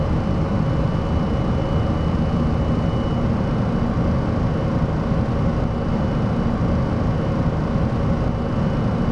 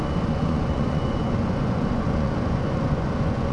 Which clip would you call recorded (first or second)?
first